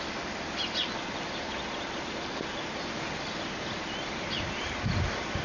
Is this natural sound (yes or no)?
yes